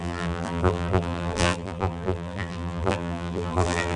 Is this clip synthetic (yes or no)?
yes